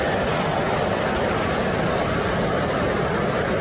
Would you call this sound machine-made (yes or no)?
no